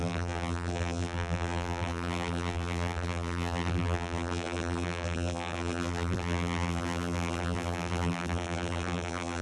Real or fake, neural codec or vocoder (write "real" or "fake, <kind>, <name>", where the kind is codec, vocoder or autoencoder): fake, vocoder, BigVGAN v2